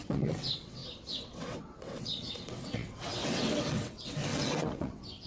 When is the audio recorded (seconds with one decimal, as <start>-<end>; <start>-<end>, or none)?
none